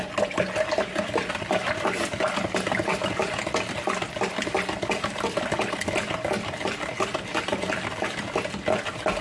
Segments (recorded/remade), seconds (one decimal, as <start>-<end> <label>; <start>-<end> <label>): 0.0-9.2 recorded